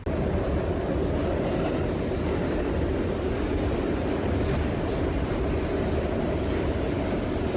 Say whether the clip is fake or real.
real